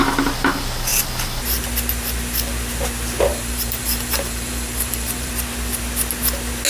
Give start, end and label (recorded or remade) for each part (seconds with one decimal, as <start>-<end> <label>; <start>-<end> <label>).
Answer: 0.0-3.3 recorded; 3.3-5.3 remade; 5.3-6.7 recorded